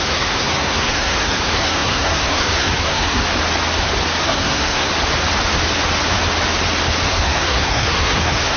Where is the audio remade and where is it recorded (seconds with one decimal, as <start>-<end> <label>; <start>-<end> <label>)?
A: 0.0-3.2 remade; 3.2-4.2 recorded; 4.2-4.9 remade; 4.9-7.1 recorded; 7.1-8.6 remade